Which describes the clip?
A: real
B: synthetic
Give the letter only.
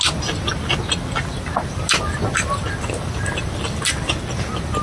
A